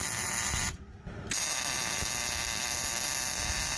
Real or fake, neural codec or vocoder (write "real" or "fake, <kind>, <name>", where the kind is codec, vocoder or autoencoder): real